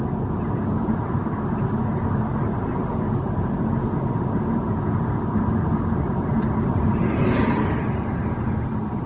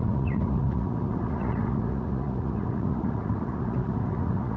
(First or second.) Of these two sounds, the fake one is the second